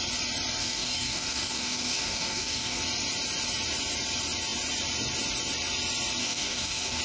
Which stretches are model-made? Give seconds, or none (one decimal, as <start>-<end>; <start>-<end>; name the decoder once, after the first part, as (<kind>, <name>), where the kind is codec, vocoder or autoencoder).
0.6-2.8 (codec, DAC); 6.2-7.0